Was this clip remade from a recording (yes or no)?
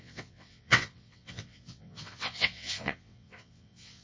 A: yes